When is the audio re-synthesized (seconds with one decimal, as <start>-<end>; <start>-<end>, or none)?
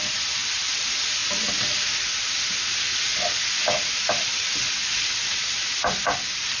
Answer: 0.0-1.2; 2.5-6.6